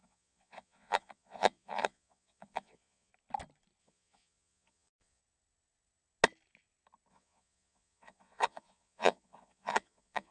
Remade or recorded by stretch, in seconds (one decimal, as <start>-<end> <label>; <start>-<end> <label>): 0.0-3.1 remade; 3.1-3.8 recorded; 3.8-5.2 remade; 5.2-7.1 recorded; 7.1-10.3 remade